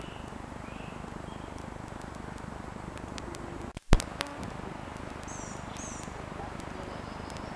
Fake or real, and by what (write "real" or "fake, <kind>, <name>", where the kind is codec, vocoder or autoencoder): real